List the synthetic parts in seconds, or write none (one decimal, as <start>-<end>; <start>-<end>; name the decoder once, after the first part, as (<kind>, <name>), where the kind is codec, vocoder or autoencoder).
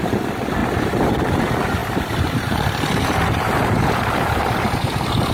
0.6-1.1 (vocoder, BigVGAN v2); 1.8-5.3